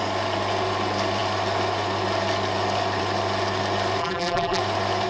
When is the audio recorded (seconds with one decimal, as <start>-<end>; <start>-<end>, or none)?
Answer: 0.0-4.0; 4.6-5.1